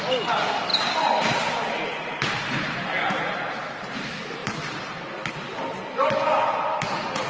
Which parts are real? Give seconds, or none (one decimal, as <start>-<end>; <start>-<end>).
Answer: 0.0-0.7; 3.2-4.4; 5.0-7.3